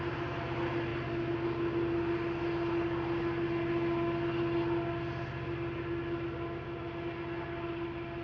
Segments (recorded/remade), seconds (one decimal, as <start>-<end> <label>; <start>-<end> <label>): 0.0-8.2 recorded